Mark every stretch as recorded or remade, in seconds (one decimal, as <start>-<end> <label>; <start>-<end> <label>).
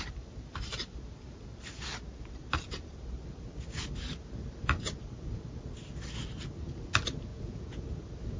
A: 0.0-7.3 recorded; 7.3-7.8 remade; 7.8-8.4 recorded